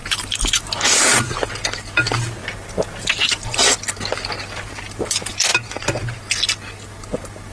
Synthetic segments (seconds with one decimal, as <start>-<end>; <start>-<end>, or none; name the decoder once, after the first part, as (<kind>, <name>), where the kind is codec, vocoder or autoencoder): 0.0-1.1 (vocoder, BigVGAN v2)